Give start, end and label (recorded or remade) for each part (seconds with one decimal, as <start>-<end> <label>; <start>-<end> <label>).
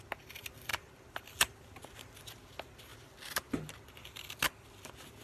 0.0-5.2 recorded